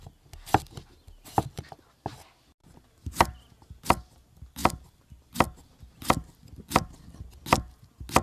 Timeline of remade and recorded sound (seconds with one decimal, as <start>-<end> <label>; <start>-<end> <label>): 0.0-8.2 recorded